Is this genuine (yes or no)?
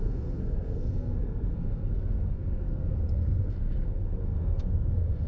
no